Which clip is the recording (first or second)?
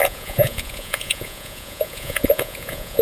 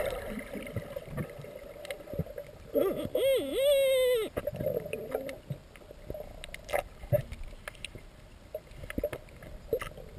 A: second